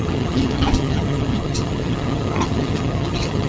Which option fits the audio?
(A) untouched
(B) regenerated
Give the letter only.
B